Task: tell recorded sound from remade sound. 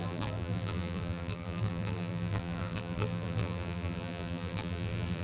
remade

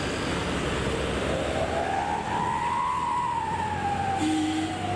recorded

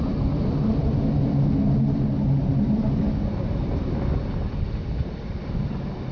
recorded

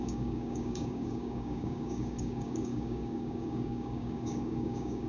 remade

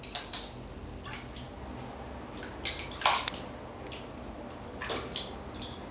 recorded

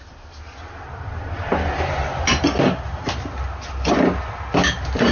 recorded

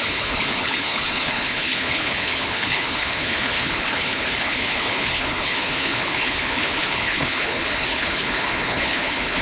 remade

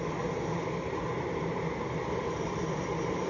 recorded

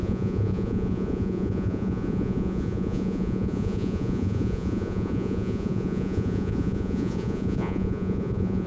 remade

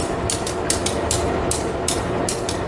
recorded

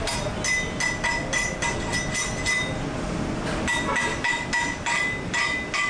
recorded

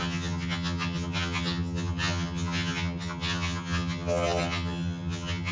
remade